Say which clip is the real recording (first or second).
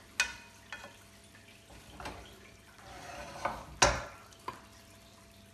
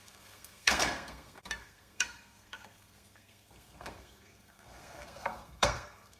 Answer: first